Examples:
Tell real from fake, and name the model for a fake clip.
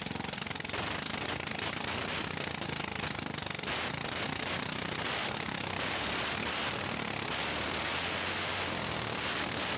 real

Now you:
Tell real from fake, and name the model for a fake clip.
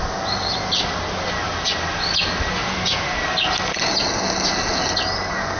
real